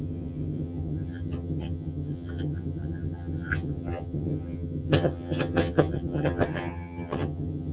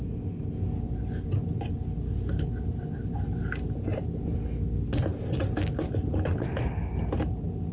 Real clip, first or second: second